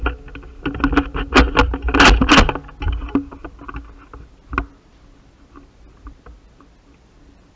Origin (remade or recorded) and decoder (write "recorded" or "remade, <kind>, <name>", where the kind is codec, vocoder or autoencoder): recorded